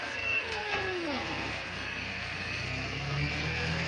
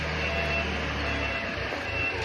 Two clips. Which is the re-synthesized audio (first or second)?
first